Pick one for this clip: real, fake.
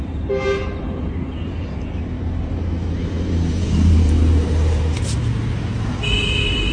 real